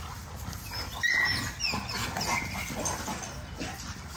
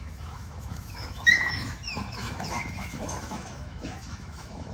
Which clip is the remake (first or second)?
second